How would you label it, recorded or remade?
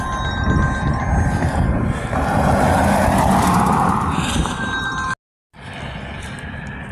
recorded